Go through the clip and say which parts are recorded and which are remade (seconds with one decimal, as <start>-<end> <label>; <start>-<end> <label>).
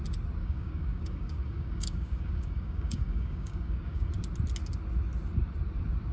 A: 0.0-0.4 recorded; 0.4-4.1 remade; 4.1-6.1 recorded